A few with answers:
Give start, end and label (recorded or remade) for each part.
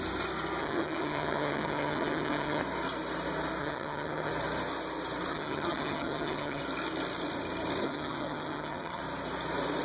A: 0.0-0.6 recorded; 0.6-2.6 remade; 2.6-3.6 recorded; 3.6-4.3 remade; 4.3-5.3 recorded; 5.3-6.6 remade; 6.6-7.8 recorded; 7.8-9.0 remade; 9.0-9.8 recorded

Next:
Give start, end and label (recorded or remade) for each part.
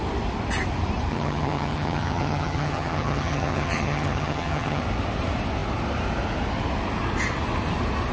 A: 0.0-1.1 recorded; 1.1-4.8 remade; 4.8-8.1 recorded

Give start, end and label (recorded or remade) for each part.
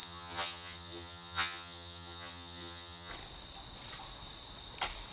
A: 0.0-3.1 remade; 3.1-5.1 recorded